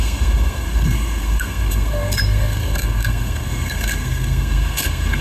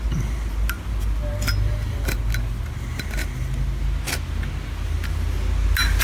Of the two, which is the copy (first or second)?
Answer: first